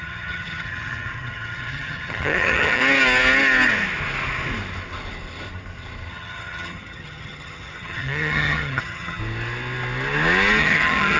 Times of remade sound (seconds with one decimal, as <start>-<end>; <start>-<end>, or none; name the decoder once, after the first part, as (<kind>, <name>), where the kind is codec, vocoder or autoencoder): 0.0-2.8 (vocoder, HiFi-GAN); 6.1-9.2; 10.6-11.2